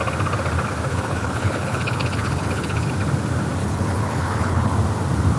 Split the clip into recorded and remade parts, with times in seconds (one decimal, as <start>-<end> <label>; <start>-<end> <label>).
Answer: 0.0-0.9 recorded; 0.9-2.9 remade; 2.9-3.6 recorded; 3.6-4.7 remade; 4.7-5.4 recorded